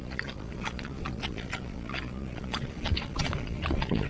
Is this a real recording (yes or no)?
no